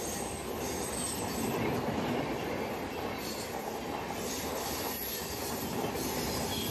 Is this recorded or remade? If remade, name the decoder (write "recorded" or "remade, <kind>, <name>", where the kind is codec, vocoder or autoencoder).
recorded